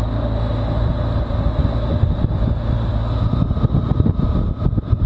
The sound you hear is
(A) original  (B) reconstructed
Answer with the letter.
A